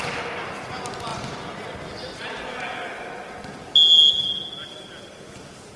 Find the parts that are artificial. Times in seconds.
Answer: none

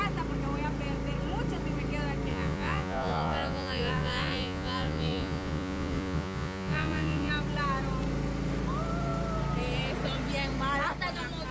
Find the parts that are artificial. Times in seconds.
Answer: 2.3-7.3 (vocoder, Vocos)